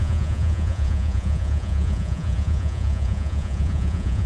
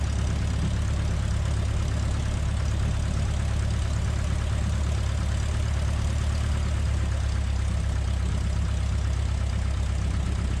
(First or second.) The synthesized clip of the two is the first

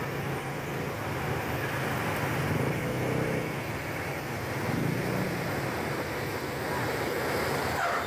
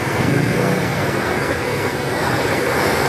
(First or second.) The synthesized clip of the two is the second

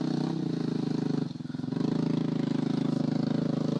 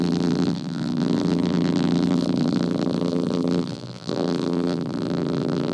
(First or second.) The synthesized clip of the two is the second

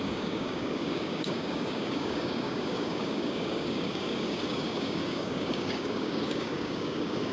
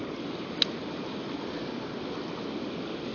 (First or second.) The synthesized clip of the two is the first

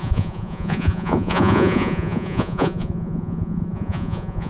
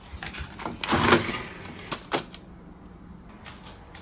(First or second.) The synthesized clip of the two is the first